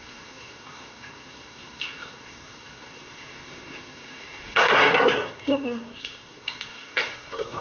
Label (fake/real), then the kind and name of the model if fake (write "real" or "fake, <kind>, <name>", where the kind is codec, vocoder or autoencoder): fake, codec, SNAC